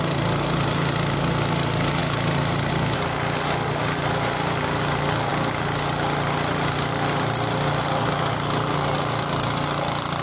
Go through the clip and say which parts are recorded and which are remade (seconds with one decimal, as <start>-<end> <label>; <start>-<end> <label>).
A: 0.0-10.2 recorded